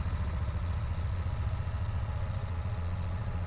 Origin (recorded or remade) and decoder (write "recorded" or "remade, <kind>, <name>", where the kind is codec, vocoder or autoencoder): remade, vocoder, Vocos